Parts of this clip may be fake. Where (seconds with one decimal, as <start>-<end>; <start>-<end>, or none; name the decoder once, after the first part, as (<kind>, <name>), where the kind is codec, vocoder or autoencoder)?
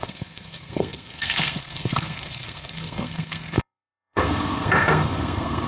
0.0-5.7 (codec, SNAC)